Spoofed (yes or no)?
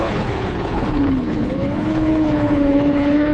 yes